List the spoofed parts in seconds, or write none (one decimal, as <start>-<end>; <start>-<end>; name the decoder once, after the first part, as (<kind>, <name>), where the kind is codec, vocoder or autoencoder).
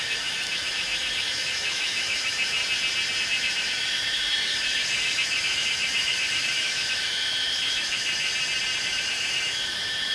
0.0-2.6 (autoencoder, DAC-VAE); 3.2-8.3; 8.8-10.1